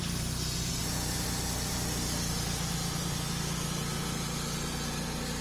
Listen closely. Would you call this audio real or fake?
real